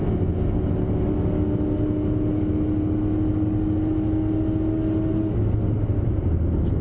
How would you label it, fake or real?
real